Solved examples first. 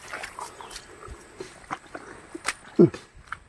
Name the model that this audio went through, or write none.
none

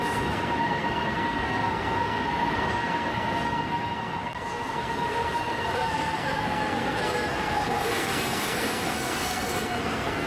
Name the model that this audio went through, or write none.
codec, SNAC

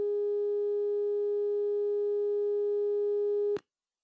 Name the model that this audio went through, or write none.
none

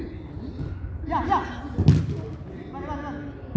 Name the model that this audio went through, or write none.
none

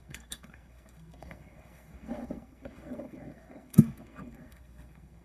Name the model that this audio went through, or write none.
codec, SNAC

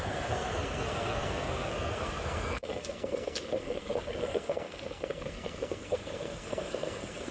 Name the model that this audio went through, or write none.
codec, SNAC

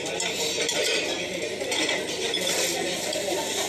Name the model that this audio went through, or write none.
none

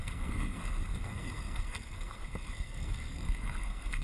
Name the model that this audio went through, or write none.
codec, SNAC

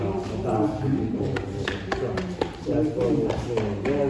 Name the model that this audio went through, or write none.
none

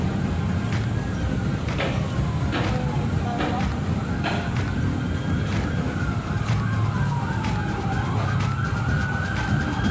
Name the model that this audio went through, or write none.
none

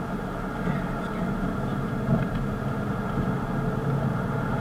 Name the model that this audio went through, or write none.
none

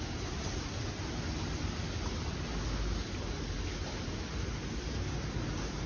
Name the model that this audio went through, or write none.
none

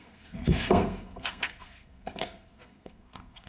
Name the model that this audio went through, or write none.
codec, SNAC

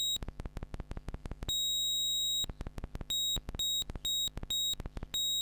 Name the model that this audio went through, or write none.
none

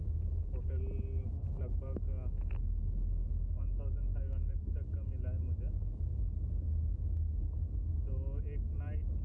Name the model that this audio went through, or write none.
none